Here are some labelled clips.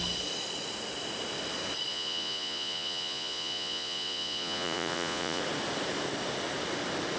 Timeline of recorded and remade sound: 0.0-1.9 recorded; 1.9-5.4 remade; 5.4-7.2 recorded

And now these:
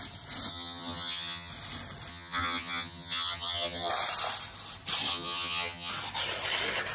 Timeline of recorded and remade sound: 0.0-0.5 recorded; 0.5-1.5 remade; 1.5-2.1 recorded; 2.1-3.9 remade; 3.9-5.1 recorded; 5.1-5.9 remade; 5.9-6.9 recorded

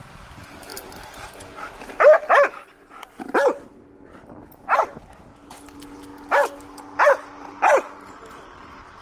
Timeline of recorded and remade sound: 0.0-9.0 recorded